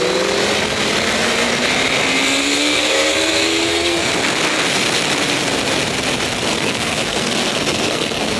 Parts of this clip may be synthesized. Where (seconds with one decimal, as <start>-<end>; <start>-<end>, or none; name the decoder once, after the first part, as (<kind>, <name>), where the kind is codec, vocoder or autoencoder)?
2.6-4.1 (codec, SNAC); 6.5-8.4